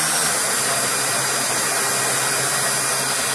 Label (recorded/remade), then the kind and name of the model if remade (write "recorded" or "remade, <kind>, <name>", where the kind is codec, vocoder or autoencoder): recorded